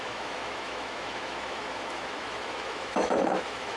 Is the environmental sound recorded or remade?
remade